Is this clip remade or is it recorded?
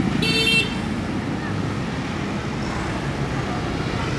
recorded